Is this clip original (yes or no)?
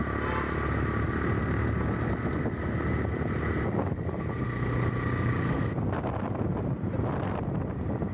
yes